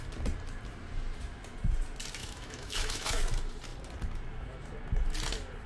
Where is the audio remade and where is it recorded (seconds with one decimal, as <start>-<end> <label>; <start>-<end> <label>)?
0.0-2.2 recorded; 2.2-3.2 remade; 3.2-5.7 recorded